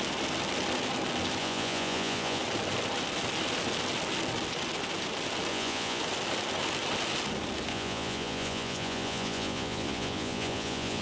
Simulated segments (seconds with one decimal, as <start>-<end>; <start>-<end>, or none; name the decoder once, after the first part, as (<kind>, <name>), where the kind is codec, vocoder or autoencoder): 1.4-2.4 (vocoder, Vocos); 5.5-6.0; 7.7-11.0